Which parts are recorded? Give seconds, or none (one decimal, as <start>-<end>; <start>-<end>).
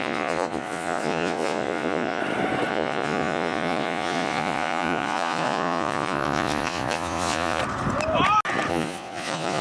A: 2.2-2.7; 7.6-8.7